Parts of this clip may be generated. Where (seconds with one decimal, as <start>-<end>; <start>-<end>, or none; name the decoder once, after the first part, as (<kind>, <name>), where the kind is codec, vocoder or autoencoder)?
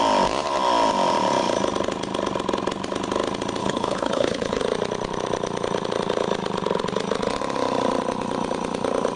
3.6-4.6 (codec, HILCodec)